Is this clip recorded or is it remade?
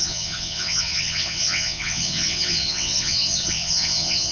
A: remade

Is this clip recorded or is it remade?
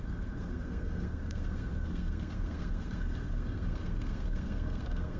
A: remade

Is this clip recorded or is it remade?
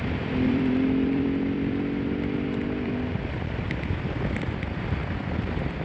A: remade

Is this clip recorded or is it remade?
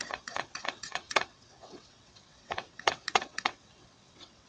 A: remade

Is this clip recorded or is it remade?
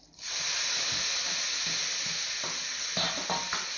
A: recorded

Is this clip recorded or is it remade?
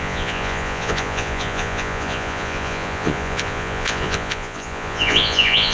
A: remade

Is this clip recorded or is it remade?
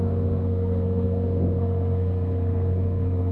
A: remade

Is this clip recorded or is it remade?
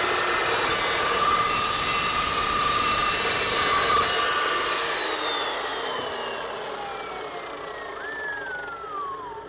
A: recorded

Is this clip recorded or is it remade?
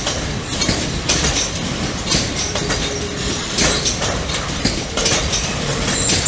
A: remade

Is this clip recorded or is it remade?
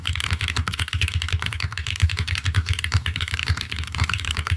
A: remade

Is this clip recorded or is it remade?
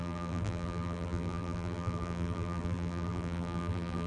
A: remade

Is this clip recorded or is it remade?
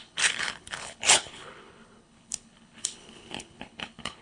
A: remade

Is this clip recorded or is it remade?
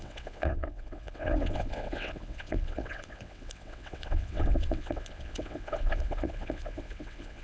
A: remade